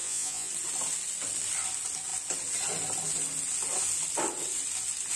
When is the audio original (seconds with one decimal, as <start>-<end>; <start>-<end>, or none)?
0.5-5.2